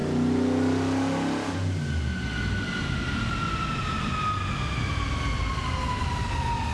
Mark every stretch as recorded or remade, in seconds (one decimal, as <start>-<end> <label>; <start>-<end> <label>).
0.0-6.7 recorded